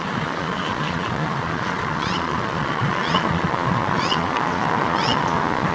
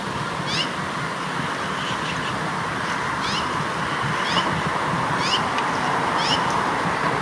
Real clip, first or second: second